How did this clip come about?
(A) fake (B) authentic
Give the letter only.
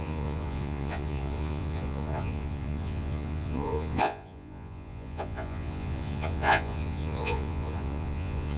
A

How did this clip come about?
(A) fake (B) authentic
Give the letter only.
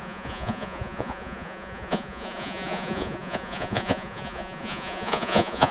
A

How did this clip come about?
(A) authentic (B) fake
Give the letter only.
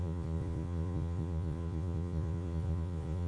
B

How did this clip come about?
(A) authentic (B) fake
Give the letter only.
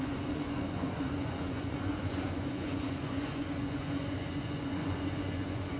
B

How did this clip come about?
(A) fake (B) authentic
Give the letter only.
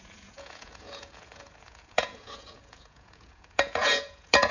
A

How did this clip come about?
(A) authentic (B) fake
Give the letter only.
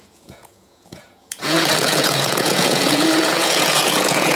B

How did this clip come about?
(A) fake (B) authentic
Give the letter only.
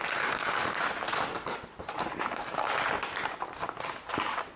B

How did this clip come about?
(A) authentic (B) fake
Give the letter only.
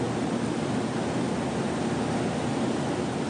A